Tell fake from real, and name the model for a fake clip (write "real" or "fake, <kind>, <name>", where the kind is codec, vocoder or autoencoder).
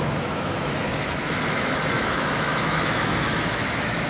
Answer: fake, autoencoder, DAC-VAE